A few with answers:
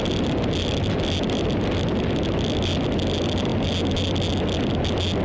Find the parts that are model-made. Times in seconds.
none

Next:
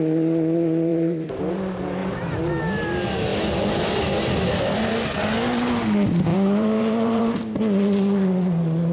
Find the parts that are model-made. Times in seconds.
0.9-1.4 (vocoder, BigVGAN v2); 2.0-2.5; 6.3-7.2

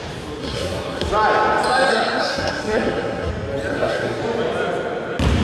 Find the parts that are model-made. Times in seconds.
0.4-1.1 (codec, SNAC); 1.9-3.3; 3.7-4.2

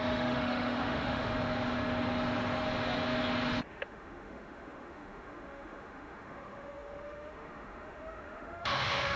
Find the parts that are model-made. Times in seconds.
0.0-1.3 (autoencoder, DAC-VAE); 3.7-9.2

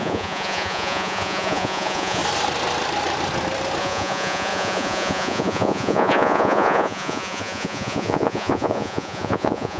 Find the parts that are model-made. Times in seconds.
0.0-2.2 (vocoder, Vocos); 3.8-9.8

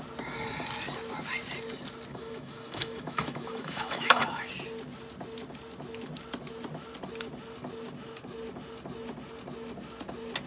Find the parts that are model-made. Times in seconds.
2.1-4.5 (autoencoder, DAC-VAE)